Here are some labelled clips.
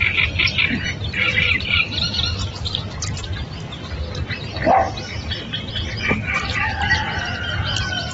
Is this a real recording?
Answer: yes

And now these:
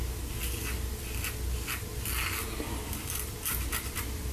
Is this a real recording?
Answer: yes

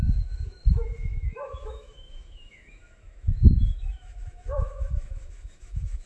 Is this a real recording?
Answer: no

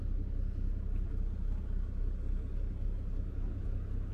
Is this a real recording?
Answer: yes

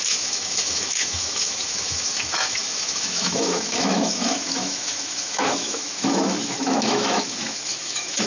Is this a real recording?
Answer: no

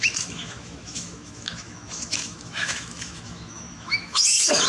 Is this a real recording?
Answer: no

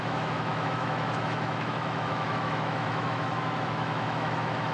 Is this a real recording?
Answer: no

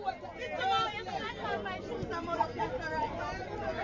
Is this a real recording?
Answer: yes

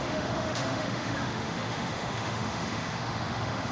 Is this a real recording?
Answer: no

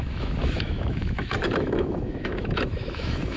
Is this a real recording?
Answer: no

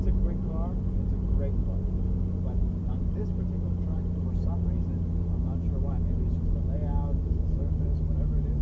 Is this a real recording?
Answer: yes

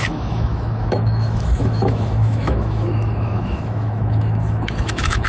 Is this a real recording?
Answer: no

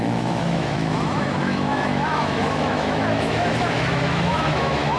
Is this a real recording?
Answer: no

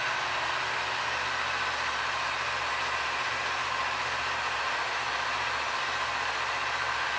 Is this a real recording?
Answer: yes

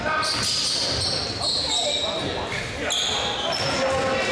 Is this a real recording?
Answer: yes